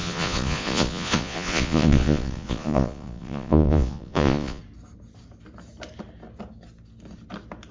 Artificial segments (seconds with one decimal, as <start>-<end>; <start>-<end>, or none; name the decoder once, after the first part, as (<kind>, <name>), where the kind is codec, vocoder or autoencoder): 0.0-4.6 (vocoder, Vocos)